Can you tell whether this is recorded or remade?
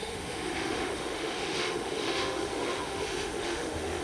remade